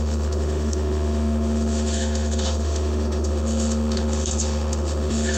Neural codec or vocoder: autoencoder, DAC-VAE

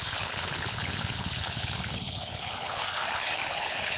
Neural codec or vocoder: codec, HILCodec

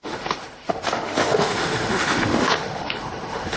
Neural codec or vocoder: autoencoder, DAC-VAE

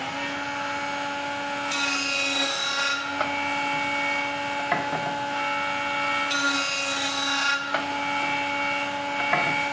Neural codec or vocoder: none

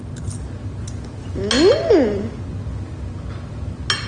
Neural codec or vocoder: none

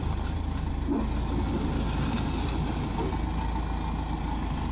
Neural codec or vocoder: none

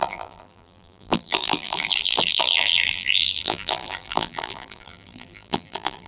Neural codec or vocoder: vocoder, BigVGAN v2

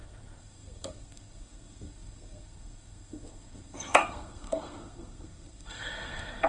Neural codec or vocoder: codec, SNAC